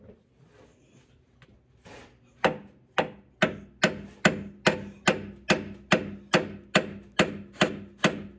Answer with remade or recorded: recorded